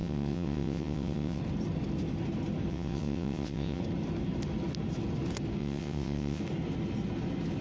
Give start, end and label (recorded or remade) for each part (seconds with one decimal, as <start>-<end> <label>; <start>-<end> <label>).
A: 0.0-1.4 remade; 1.4-2.7 recorded; 2.7-3.8 remade; 3.8-5.6 recorded; 5.6-6.4 remade; 6.4-7.6 recorded